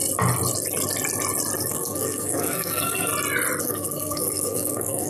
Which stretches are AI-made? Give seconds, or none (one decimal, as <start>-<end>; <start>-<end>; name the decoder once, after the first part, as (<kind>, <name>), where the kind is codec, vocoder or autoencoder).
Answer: 1.7-3.1 (codec, SNAC); 3.6-5.1